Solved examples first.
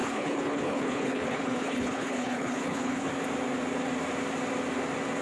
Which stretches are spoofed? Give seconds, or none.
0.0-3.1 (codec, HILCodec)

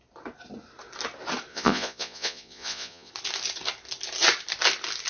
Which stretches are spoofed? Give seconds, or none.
1.5-3.1 (vocoder, Vocos)

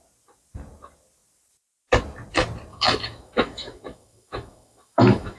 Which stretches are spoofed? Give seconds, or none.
2.7-5.4 (autoencoder, DAC-VAE)

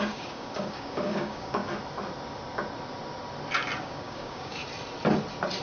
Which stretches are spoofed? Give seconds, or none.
0.0-1.6 (codec, DAC); 3.8-4.6

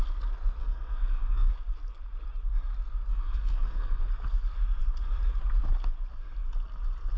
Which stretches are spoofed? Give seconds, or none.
0.6-1.5 (codec, SNAC); 3.1-4.0

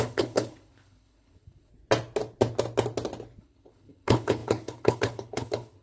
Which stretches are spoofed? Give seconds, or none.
0.0-1.7 (codec, HILCodec); 3.4-5.8

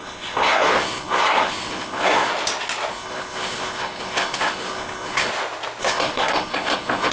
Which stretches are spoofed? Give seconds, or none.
0.0-2.3 (codec, SNAC); 2.9-5.3; 5.8-7.1

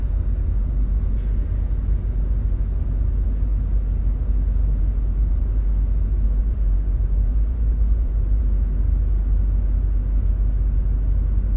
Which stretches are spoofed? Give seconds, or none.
6.4-8.4 (vocoder, Vocos)